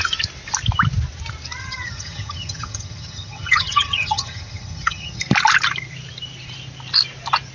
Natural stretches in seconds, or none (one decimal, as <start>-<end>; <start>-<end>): 0.0-1.6; 5.2-7.5